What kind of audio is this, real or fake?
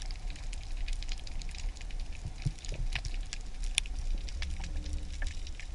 real